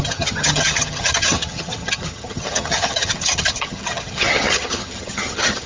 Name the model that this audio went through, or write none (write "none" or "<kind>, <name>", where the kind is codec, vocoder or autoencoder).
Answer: vocoder, HiFi-GAN